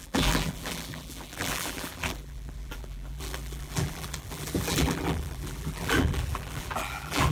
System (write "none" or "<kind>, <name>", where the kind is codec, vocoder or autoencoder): vocoder, BigVGAN v2